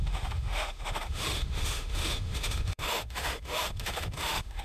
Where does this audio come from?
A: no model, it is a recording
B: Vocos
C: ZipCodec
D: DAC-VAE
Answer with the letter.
D